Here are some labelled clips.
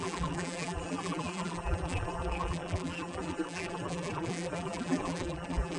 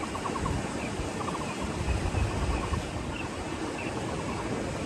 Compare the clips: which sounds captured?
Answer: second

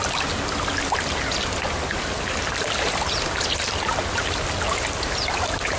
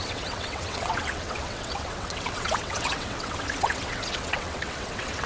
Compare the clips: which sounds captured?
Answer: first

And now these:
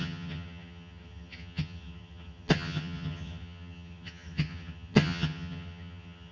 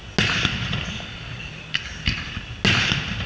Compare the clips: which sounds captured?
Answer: second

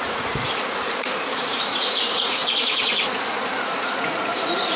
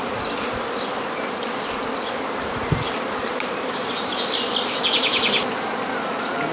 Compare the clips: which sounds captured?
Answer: second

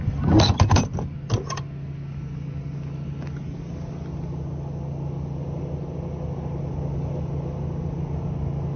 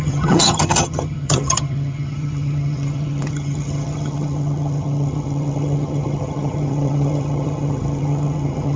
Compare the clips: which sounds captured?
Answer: first